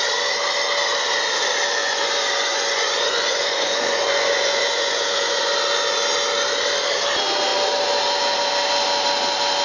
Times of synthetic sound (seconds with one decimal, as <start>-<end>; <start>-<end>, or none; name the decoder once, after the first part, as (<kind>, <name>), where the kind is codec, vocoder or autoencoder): 1.8-5.5 (vocoder, Vocos)